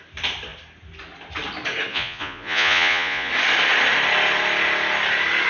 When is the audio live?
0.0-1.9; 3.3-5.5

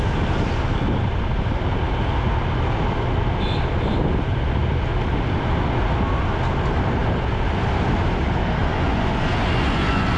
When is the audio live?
0.0-8.6

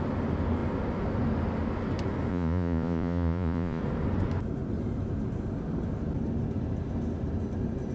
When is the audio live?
0.0-2.3; 3.8-7.9

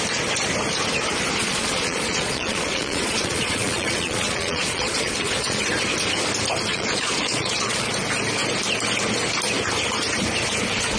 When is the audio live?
0.0-1.4; 5.6-6.7; 7.9-11.0

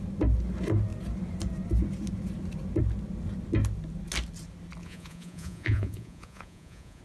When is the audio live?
0.0-4.8

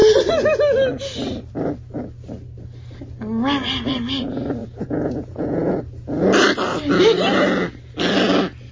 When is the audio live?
0.0-4.6; 5.8-8.7